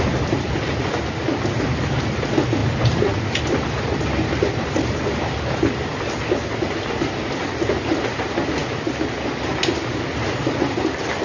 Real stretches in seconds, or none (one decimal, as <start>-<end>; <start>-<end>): 0.0-2.6; 3.4-11.2